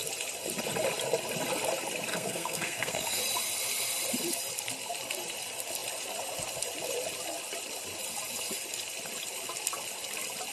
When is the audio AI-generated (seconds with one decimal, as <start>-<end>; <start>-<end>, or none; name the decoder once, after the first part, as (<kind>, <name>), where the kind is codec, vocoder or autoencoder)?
2.1-3.2 (codec, SNAC)